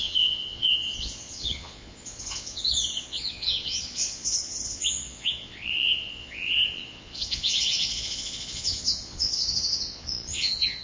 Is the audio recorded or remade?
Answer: remade